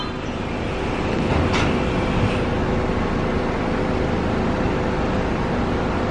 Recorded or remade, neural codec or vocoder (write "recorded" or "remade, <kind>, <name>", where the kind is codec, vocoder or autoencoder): recorded